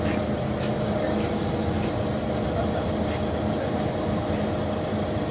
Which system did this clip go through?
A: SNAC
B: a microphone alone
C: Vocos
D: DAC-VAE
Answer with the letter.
B